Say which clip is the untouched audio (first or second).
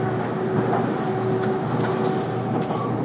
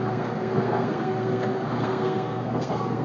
first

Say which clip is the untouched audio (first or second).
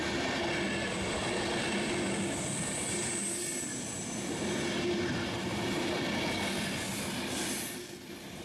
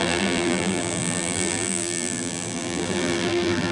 first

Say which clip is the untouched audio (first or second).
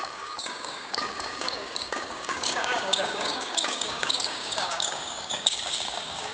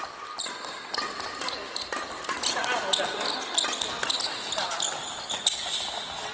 second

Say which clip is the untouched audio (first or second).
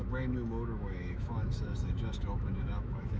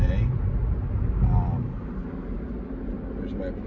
second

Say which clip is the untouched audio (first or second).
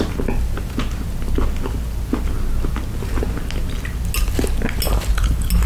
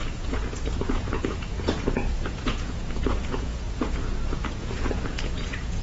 first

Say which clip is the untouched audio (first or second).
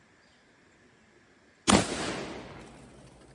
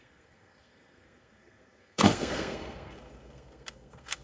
first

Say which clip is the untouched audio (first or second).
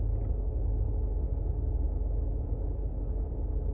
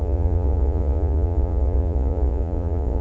first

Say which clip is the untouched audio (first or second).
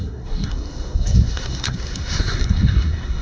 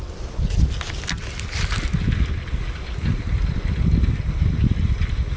second